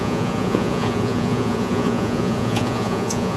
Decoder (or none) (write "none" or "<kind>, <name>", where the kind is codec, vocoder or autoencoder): vocoder, Vocos